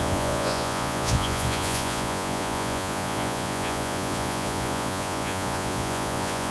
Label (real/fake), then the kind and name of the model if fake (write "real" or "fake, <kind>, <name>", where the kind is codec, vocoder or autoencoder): fake, vocoder, Vocos